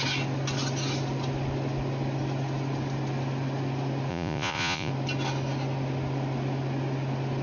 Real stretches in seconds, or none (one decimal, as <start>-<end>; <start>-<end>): 0.0-4.1; 4.9-7.4